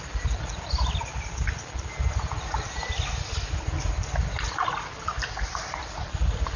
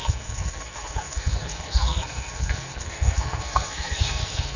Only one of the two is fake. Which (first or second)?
second